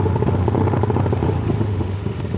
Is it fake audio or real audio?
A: fake